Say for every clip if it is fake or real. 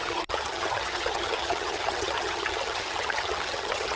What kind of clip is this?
fake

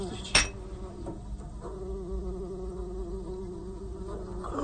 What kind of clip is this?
real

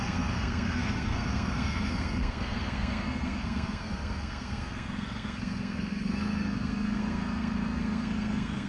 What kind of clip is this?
fake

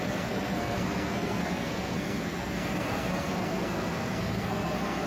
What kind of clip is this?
fake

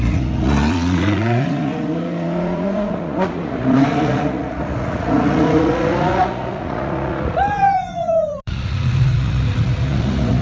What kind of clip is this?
fake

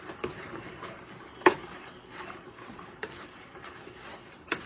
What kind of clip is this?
fake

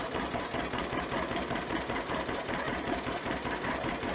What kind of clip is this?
fake